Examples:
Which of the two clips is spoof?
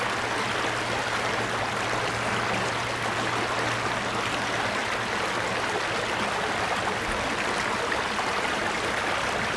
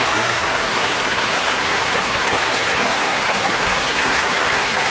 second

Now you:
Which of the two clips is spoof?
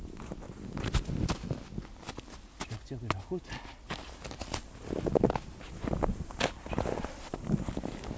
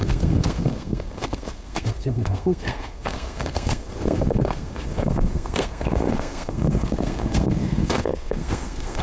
second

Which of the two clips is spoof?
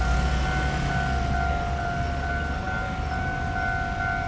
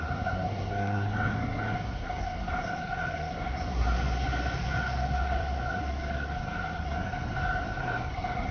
second